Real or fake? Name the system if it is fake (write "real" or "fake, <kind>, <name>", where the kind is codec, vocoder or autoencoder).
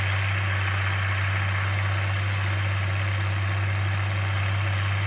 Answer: real